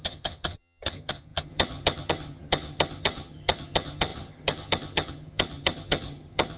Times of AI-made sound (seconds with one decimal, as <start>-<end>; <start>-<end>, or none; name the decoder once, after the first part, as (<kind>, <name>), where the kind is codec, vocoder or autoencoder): 0.0-6.6 (vocoder, HiFi-GAN)